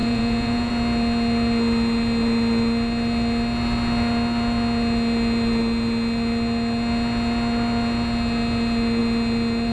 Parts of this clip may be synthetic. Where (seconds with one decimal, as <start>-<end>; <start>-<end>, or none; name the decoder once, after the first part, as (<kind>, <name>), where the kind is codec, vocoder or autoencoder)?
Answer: 0.0-0.7 (vocoder, Vocos)